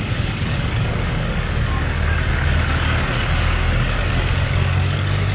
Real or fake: fake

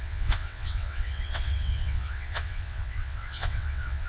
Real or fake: fake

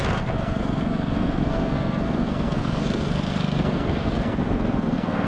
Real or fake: fake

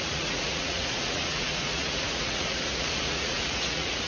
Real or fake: fake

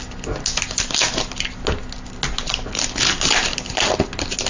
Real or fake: real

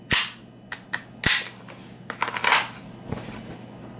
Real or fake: real